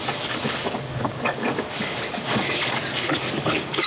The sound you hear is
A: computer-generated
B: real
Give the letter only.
A